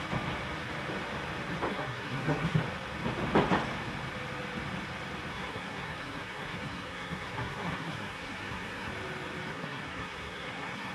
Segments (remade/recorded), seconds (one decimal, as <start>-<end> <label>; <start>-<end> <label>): 0.0-1.7 recorded; 1.7-2.6 remade; 2.6-5.3 recorded; 5.3-8.9 remade; 8.9-9.5 recorded; 9.5-10.9 remade